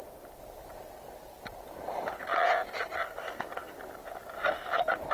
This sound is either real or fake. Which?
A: real